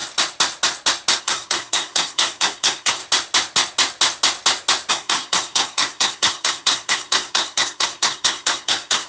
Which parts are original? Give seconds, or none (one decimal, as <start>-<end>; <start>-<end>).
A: 0.0-1.2; 3.0-4.9

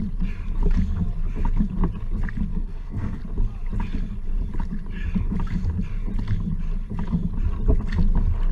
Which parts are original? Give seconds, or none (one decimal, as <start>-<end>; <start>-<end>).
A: 0.0-2.5; 3.2-8.5

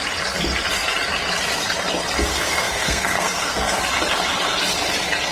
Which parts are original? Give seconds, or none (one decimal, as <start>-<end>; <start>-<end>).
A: 0.0-2.3; 3.8-5.3